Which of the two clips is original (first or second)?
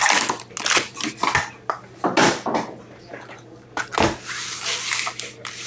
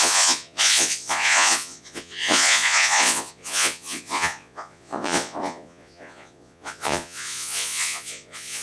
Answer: first